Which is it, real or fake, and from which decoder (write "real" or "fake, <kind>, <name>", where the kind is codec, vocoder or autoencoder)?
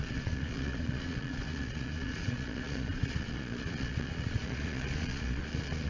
fake, vocoder, Vocos